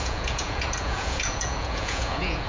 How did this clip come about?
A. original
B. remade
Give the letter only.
B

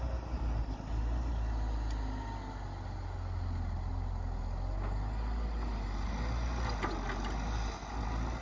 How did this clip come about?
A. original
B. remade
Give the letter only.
A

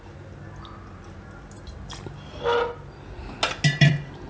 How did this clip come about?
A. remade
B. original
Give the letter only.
B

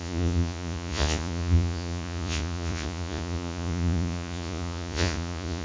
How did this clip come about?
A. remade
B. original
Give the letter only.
A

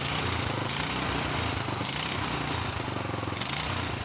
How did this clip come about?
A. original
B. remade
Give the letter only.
A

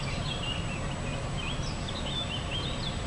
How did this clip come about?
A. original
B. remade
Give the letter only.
A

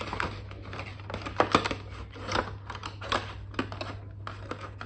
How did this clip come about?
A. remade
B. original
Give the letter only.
B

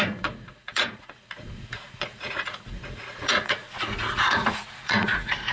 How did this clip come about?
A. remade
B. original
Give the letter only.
A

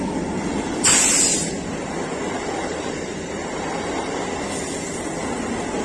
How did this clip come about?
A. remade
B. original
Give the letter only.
B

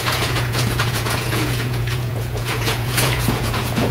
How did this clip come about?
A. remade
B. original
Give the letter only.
A